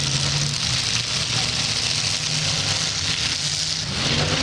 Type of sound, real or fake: real